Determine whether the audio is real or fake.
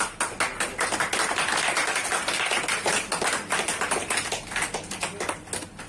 real